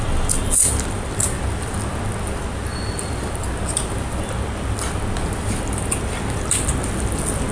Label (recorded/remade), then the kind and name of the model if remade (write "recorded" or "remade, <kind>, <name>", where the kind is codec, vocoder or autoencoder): recorded